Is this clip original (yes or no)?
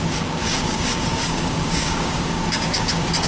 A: no